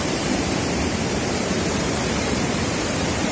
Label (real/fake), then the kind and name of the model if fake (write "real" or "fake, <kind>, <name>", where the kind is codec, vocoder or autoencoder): fake, vocoder, BigVGAN v2